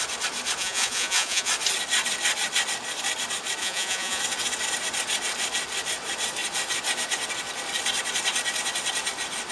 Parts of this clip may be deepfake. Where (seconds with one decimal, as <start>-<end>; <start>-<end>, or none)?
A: 0.6-1.5; 3.6-4.2